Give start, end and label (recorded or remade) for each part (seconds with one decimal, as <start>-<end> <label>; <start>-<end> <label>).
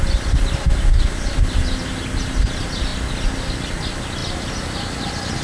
0.0-5.4 recorded